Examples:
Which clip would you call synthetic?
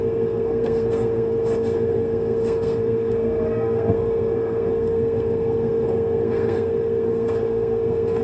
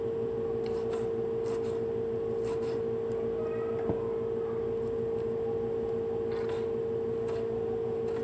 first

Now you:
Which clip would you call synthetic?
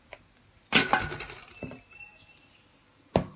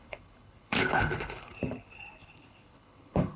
second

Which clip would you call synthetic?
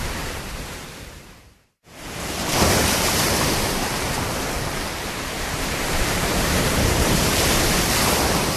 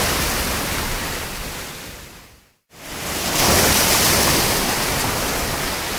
first